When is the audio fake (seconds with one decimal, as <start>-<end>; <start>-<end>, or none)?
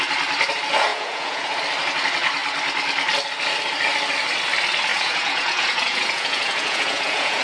0.9-1.6; 4.9-7.4